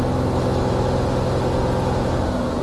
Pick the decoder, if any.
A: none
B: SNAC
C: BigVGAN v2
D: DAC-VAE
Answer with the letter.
A